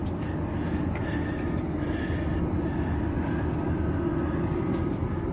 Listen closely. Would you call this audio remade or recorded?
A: recorded